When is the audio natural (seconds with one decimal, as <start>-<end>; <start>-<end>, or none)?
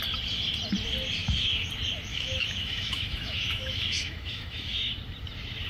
0.0-1.2; 1.7-2.1; 4.9-5.7